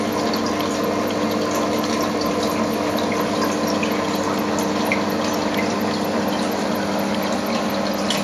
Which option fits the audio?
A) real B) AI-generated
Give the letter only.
A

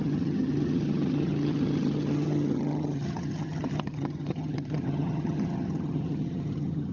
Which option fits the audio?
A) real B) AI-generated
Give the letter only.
B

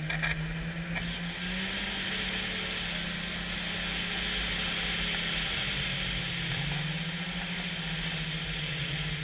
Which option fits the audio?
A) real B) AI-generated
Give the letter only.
A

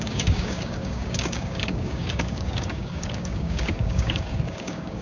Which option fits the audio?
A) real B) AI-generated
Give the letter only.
B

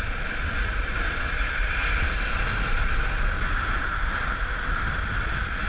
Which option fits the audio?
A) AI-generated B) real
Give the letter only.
B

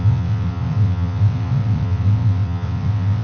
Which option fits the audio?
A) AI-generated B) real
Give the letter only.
A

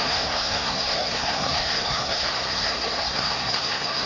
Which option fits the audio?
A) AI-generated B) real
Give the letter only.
A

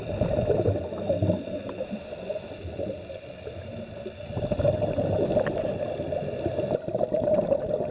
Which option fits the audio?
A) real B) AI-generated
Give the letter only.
A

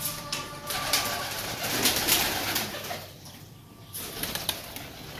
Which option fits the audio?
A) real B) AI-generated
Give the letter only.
A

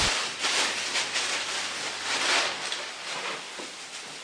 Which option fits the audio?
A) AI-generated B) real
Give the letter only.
A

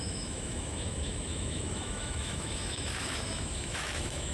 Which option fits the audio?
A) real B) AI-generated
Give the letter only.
B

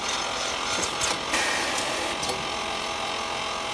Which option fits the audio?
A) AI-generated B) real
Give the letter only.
B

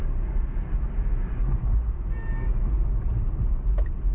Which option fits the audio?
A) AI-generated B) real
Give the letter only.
B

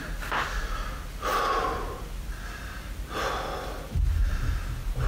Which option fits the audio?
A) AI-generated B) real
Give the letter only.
B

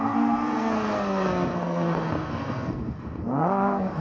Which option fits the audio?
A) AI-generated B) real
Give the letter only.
A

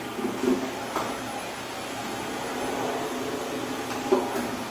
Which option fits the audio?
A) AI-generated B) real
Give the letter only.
B